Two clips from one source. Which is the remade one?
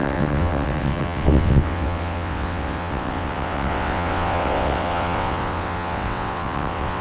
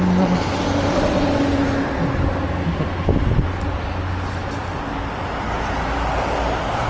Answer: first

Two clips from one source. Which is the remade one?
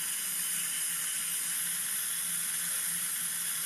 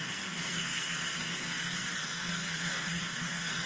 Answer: second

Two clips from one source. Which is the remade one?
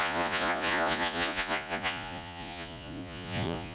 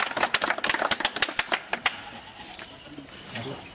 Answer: first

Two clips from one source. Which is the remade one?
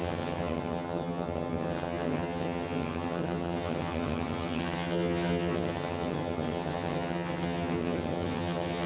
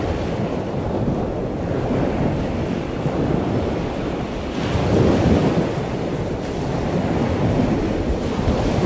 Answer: first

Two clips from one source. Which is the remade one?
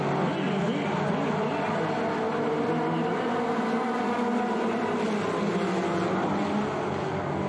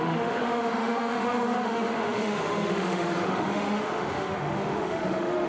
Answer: second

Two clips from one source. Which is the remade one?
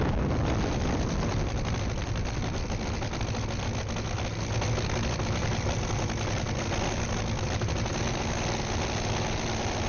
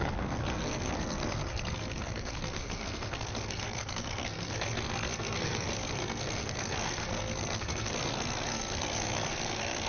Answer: second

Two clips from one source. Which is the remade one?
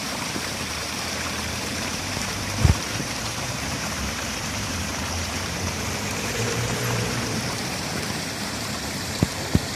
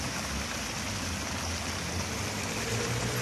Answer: first